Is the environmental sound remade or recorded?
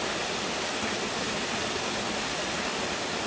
recorded